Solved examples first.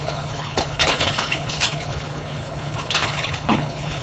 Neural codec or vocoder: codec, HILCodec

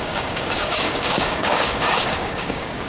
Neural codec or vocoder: codec, DAC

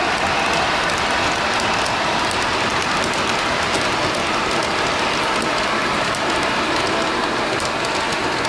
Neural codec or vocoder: none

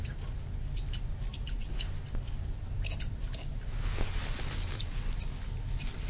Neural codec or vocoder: none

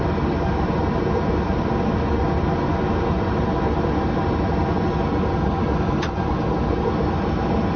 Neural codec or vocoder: none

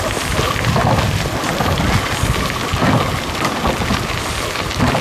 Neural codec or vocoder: none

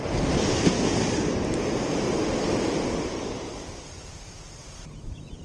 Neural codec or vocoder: none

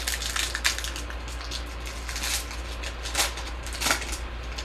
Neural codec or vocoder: none